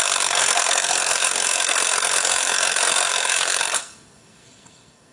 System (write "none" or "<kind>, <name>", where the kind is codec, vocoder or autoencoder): codec, SNAC